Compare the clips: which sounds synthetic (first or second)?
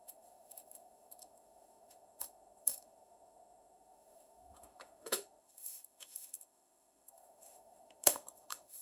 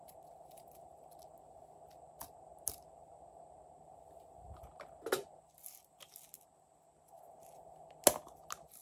first